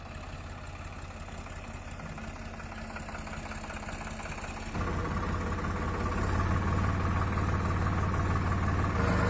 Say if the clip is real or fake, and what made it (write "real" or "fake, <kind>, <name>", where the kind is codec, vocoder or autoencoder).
real